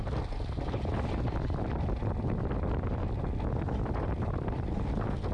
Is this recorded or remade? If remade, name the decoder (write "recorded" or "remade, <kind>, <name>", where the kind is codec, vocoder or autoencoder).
recorded